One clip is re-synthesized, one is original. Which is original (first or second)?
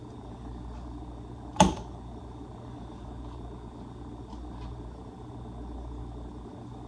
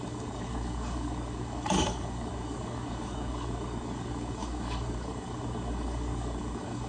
first